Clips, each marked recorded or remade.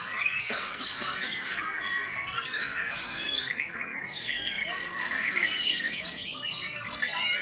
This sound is remade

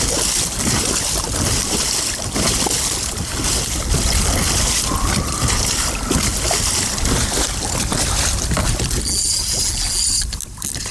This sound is recorded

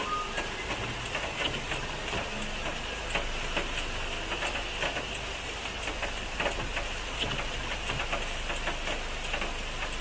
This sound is recorded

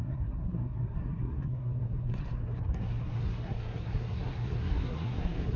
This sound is remade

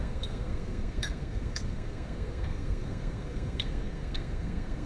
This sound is remade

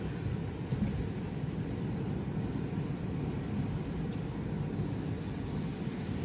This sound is recorded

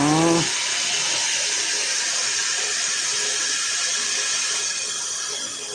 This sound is recorded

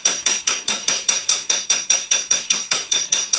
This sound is remade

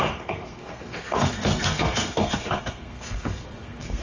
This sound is remade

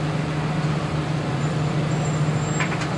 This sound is recorded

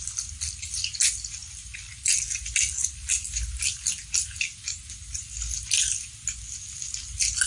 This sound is recorded